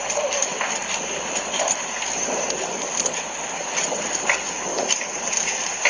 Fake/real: real